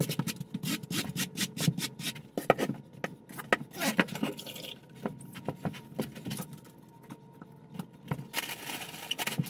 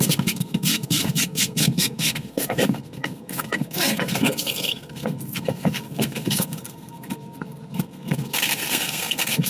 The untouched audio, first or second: first